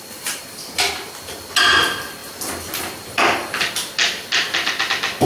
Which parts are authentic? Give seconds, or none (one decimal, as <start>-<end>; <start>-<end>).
0.0-5.3